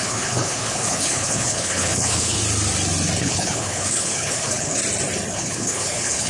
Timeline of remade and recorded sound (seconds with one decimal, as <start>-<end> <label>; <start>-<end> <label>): 0.0-2.4 remade; 2.4-3.2 recorded; 3.2-4.8 remade; 4.8-5.3 recorded; 5.3-6.3 remade